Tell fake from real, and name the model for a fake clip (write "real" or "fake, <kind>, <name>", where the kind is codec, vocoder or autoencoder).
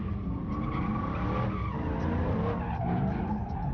real